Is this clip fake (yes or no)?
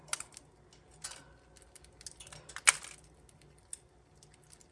no